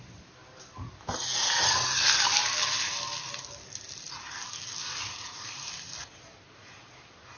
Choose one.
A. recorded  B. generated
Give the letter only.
A